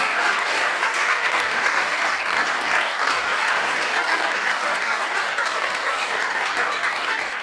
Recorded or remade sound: remade